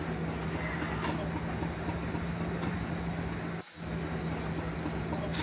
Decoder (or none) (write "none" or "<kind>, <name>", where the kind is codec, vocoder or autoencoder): none